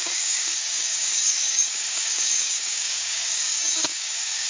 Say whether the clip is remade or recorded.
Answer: remade